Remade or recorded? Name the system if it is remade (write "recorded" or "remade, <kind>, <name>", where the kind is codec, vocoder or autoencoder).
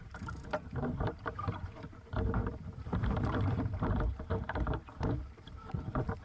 remade, vocoder, BigVGAN v2